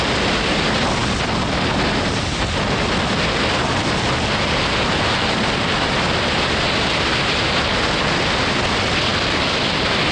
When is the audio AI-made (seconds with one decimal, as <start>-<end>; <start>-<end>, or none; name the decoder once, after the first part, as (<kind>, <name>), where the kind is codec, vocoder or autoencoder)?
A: none